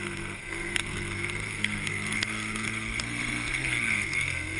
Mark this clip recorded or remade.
remade